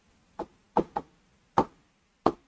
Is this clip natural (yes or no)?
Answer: yes